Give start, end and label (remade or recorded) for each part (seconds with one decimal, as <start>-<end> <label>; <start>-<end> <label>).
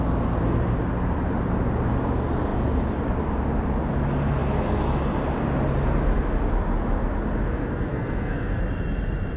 0.0-7.6 recorded; 7.6-8.6 remade; 8.6-9.4 recorded